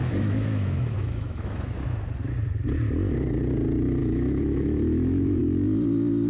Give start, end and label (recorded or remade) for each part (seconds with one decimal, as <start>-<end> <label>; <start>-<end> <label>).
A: 0.0-2.0 remade; 2.0-4.0 recorded; 4.0-5.4 remade; 5.4-6.3 recorded